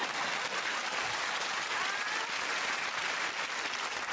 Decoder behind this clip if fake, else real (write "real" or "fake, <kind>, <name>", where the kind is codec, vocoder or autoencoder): real